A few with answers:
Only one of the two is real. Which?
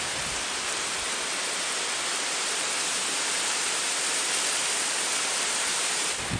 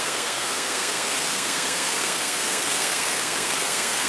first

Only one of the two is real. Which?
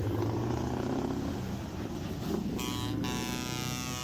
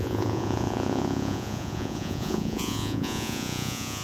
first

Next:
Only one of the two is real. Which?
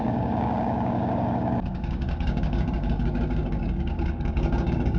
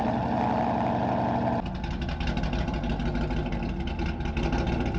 second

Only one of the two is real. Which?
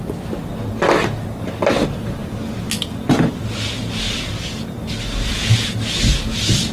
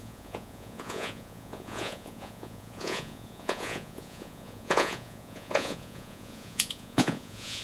first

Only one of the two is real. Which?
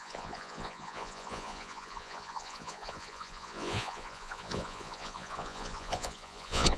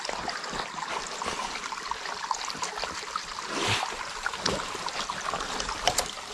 second